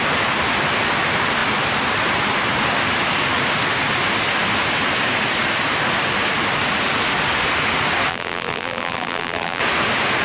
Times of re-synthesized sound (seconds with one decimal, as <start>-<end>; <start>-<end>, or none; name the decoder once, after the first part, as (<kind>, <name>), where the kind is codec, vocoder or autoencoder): 8.1-9.6 (vocoder, BigVGAN v2)

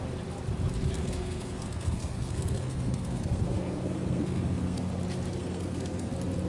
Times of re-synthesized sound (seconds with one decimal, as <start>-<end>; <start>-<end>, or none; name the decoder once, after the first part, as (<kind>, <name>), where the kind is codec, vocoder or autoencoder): 1.0-4.9 (codec, SNAC); 5.4-6.1